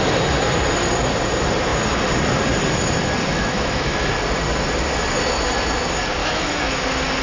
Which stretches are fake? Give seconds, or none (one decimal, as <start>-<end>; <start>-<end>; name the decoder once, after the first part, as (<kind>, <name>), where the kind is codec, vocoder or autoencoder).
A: 3.3-4.1 (autoencoder, DAC-VAE); 6.2-6.7